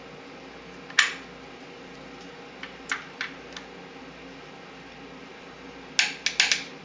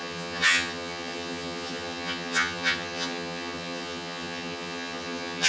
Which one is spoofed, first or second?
second